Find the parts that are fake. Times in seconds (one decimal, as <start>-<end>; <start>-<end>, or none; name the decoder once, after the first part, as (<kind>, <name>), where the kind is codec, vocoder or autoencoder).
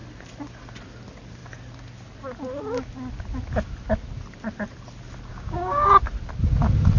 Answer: 5.3-5.9 (codec, DAC)